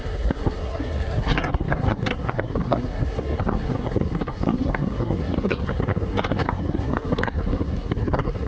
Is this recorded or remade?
remade